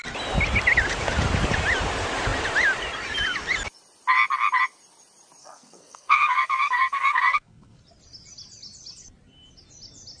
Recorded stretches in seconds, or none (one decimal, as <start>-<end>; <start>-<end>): 0.0-5.4; 7.8-10.2